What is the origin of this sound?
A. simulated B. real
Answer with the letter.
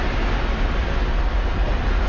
B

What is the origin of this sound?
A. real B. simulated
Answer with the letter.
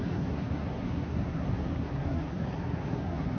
B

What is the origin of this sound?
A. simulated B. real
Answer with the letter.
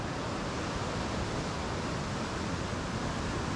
B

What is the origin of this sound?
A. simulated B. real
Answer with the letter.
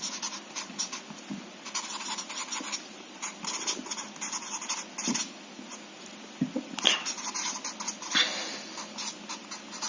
B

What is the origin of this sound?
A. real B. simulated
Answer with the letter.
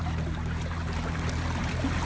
A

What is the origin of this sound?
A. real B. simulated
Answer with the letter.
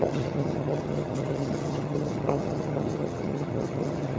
B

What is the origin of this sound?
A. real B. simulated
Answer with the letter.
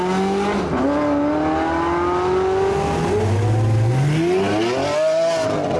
A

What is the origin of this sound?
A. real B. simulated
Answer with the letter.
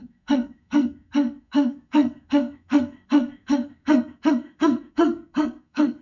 B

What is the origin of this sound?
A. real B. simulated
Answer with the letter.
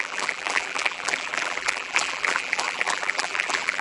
B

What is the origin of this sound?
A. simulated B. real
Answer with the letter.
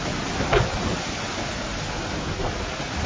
B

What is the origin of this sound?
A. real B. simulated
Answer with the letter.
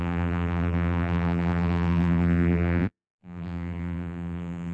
B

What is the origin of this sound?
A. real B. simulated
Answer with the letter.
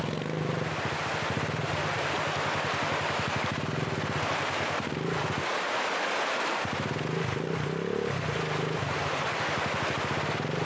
A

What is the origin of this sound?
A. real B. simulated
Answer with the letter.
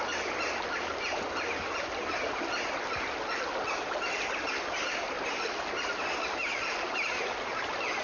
A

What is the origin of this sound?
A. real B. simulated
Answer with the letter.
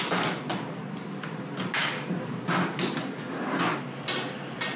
A